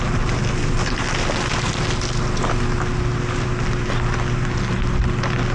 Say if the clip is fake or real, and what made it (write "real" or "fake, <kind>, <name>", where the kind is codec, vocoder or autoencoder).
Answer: real